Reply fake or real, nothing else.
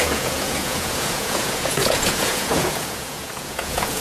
fake